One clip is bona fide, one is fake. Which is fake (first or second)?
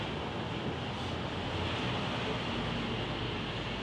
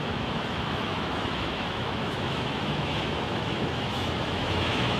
second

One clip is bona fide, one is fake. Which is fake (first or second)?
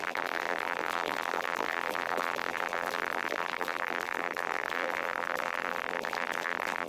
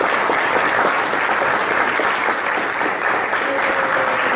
first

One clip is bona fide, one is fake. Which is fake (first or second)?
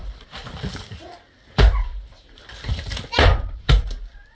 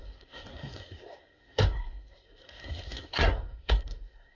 second